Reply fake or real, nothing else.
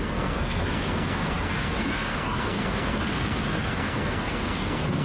fake